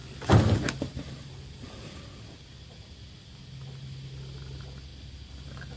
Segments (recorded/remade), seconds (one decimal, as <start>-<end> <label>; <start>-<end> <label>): 0.0-5.8 recorded